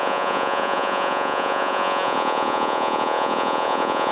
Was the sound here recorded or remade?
remade